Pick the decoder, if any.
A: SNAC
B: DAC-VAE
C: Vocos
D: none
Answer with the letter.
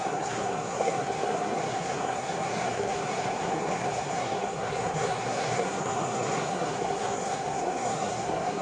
A